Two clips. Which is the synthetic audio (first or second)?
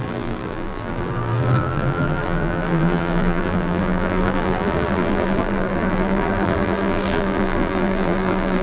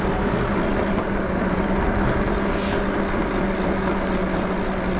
first